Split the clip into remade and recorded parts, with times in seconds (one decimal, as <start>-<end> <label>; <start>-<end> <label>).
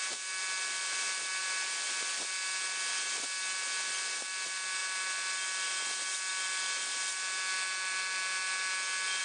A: 0.0-1.4 recorded; 1.4-2.3 remade; 2.3-9.2 recorded